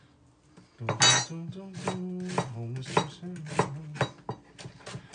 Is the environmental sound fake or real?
real